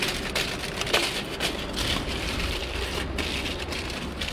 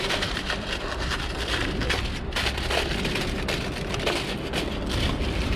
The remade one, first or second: second